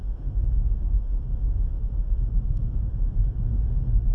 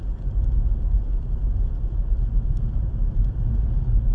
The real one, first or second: second